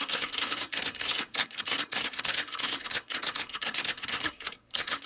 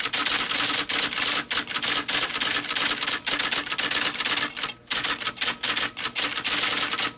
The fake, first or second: first